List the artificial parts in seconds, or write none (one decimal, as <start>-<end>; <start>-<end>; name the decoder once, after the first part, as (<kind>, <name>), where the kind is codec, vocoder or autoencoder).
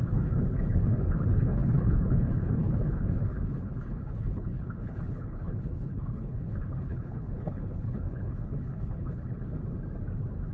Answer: 0.0-9.6 (codec, HILCodec)